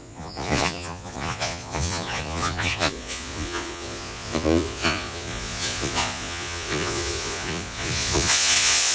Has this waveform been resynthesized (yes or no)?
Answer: yes